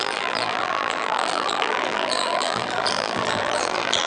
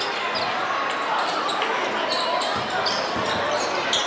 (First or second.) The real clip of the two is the second